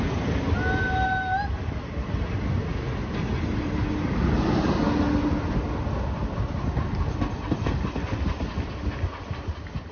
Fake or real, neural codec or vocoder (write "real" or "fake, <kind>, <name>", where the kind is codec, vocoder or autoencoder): real